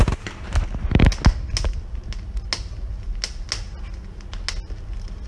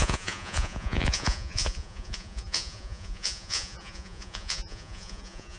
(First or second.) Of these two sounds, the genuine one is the first